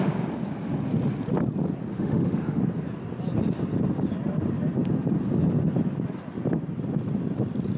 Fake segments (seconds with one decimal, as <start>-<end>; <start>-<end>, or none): 1.9-2.6